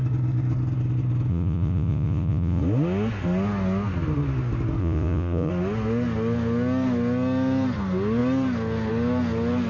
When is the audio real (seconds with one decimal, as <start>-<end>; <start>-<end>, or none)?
0.0-1.3; 2.6-4.8; 5.5-9.7